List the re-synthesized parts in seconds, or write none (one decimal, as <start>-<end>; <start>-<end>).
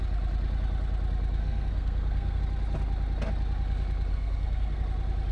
1.4-2.4; 4.1-4.8